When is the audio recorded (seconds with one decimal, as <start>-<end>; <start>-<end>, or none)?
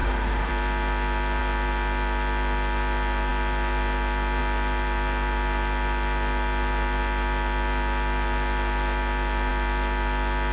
0.5-10.5